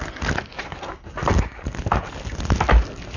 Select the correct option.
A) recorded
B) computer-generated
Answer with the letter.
A